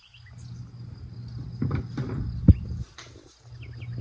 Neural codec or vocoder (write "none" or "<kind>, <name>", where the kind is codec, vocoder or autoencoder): none